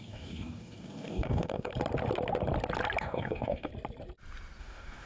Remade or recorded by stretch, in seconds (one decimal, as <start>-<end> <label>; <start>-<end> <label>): 0.0-1.7 remade; 1.7-3.0 recorded; 3.0-3.7 remade; 3.7-4.6 recorded; 4.6-5.1 remade